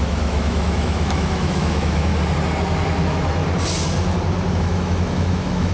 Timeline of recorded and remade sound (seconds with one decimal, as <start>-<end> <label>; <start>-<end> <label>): 0.0-2.1 remade; 2.1-3.0 recorded; 3.0-3.4 remade; 3.4-4.5 recorded; 4.5-5.7 remade